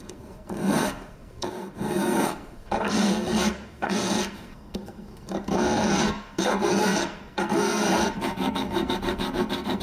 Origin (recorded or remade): remade